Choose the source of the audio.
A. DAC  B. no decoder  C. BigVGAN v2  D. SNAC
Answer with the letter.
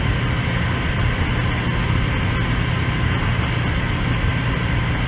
B